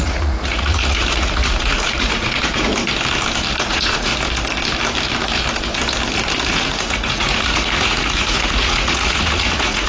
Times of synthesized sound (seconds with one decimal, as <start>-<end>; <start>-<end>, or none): 0.0-2.7; 3.6-4.1; 6.5-9.9